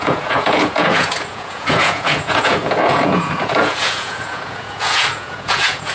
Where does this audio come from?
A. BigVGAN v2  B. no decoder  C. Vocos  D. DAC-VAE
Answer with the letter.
C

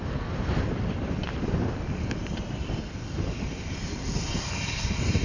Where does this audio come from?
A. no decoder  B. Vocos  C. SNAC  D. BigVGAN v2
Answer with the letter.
A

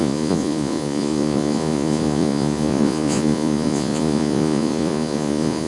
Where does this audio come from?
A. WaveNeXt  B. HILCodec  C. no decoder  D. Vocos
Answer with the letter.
D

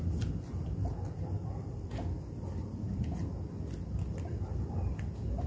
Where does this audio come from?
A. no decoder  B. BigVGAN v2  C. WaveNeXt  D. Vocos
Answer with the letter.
A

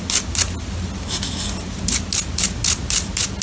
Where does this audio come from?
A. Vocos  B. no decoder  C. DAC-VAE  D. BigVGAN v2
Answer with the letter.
B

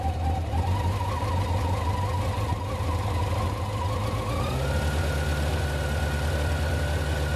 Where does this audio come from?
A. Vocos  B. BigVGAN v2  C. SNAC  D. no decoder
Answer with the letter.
D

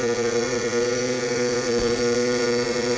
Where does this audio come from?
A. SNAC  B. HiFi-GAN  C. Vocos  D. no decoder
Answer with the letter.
C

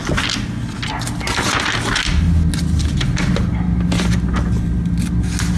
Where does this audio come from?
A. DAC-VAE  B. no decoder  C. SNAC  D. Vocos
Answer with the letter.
B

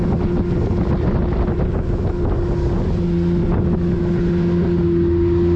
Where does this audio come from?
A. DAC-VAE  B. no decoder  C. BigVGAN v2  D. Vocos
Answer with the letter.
B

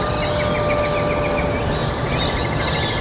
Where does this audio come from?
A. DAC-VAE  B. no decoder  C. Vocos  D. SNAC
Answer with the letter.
B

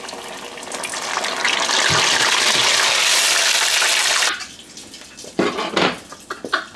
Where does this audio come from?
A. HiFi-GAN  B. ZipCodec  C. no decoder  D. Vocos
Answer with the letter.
C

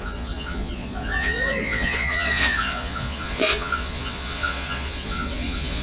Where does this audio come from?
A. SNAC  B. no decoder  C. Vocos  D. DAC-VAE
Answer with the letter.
C